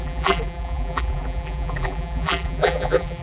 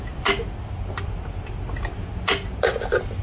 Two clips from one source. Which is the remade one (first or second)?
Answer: first